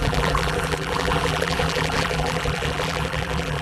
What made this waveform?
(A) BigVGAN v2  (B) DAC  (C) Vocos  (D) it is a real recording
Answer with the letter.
A